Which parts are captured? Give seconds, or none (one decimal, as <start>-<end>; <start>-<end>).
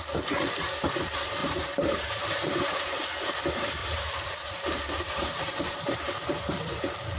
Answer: 0.0-1.4; 3.0-3.8; 6.7-7.2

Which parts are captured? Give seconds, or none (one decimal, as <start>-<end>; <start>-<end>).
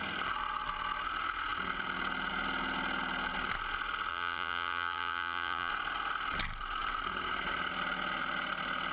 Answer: 0.0-4.1; 5.7-8.9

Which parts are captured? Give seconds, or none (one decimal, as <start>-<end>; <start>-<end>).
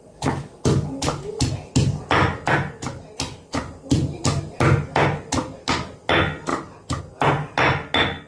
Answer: 0.0-3.6; 4.2-8.3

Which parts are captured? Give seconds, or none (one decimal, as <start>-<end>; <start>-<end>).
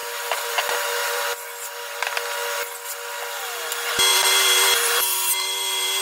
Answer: 1.2-4.1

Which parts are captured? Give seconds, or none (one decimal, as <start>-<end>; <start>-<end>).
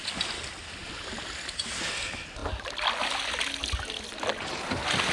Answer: 0.0-5.1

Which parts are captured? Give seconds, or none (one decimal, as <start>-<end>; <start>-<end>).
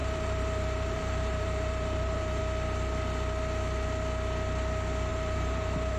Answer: 2.4-5.1